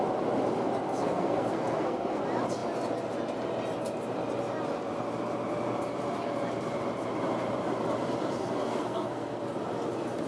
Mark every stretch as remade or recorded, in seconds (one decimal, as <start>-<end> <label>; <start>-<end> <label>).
0.0-1.0 recorded; 1.0-2.2 remade; 2.2-8.4 recorded; 8.4-9.4 remade; 9.4-10.3 recorded